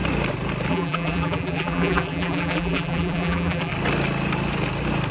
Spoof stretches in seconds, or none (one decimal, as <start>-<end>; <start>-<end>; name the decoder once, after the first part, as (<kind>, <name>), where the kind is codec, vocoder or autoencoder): 0.7-3.7 (vocoder, BigVGAN v2)